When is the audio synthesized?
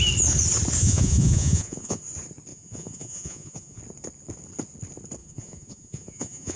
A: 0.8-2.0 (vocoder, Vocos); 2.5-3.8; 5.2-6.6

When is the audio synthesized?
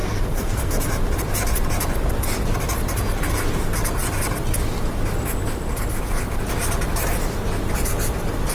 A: 0.0-0.7 (codec, SNAC)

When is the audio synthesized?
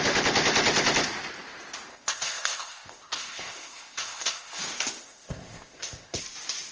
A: 1.9-4.6 (codec, ZipCodec); 5.0-6.2